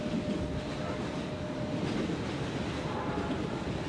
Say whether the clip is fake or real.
real